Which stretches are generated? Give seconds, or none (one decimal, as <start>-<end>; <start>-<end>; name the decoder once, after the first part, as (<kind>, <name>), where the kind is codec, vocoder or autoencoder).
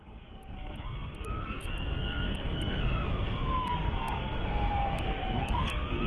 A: 0.0-6.1 (codec, SNAC)